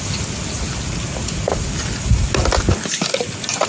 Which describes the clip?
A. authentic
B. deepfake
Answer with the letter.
A